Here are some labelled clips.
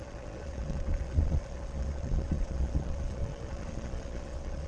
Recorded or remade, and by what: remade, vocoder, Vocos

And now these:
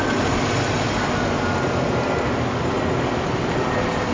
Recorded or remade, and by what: recorded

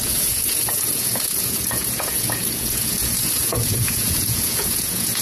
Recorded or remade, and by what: remade, vocoder, Vocos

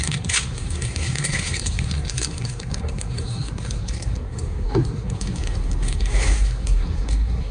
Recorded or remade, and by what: remade, codec, SNAC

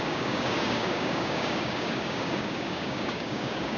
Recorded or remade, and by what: remade, codec, DAC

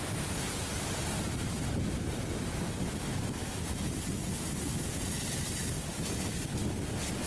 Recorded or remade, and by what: recorded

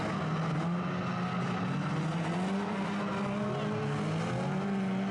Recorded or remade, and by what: recorded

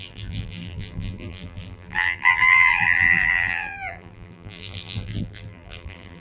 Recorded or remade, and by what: remade, vocoder, BigVGAN v2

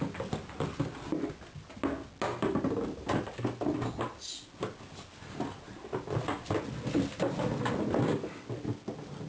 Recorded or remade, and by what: recorded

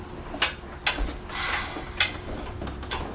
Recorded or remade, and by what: recorded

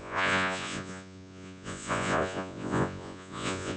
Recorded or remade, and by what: remade, vocoder, Vocos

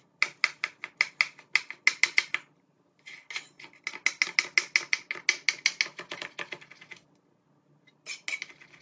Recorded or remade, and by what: recorded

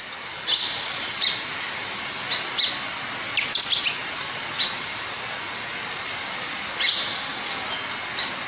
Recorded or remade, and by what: recorded